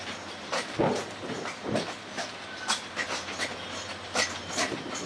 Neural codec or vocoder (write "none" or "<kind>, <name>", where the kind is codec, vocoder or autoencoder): none